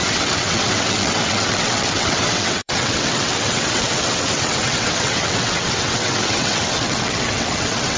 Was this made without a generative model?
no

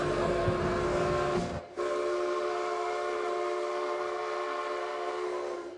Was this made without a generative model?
no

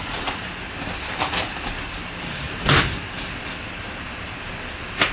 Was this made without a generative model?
yes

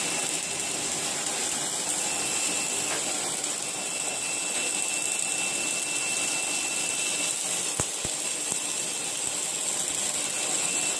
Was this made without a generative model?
yes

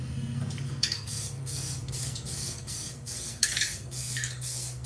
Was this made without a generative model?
no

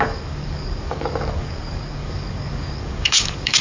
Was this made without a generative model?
no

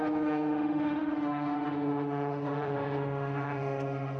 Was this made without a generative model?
no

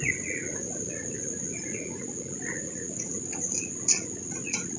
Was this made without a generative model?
no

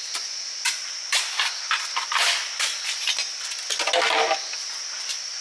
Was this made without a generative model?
yes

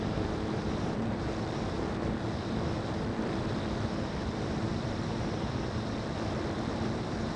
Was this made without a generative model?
no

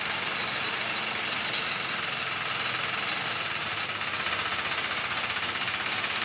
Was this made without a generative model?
yes